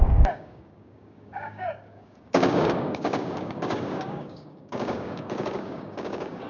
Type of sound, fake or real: fake